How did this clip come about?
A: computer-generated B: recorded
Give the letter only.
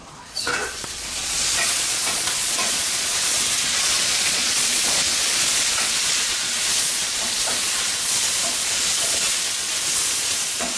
A